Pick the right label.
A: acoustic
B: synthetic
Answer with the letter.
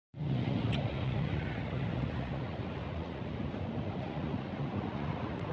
B